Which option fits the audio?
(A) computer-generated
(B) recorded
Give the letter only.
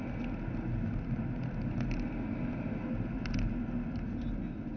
B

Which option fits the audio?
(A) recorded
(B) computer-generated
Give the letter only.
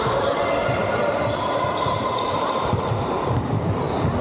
B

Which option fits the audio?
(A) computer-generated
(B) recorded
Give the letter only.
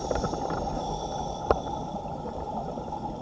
B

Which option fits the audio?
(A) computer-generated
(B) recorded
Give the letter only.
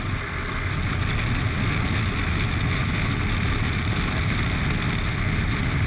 B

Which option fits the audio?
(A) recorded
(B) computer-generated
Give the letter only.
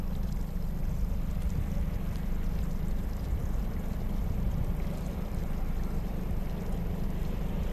A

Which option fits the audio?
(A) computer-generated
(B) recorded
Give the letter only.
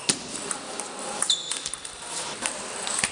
A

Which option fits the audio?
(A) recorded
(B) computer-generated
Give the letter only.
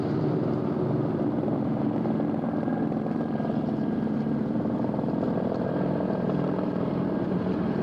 B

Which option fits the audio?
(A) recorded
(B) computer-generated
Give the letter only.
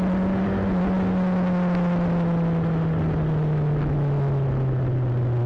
A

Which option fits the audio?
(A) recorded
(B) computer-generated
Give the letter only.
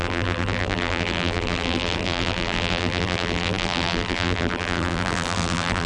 B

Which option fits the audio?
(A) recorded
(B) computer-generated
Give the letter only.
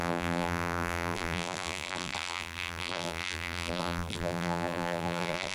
B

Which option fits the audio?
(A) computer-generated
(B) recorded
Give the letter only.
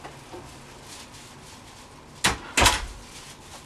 B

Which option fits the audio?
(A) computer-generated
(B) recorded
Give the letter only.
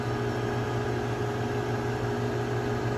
B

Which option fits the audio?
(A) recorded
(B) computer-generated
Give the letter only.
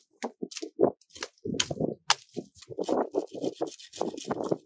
A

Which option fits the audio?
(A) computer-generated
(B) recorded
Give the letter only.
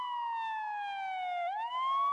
B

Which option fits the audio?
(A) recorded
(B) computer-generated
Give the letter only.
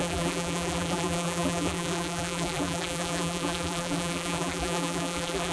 B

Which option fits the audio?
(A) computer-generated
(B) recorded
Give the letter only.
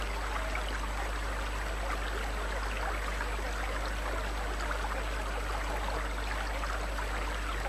B